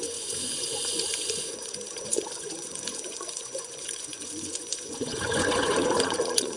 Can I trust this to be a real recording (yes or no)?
no